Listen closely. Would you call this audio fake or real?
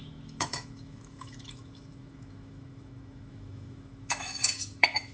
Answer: fake